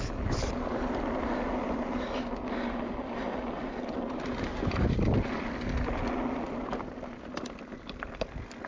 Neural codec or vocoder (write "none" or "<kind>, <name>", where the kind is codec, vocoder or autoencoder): none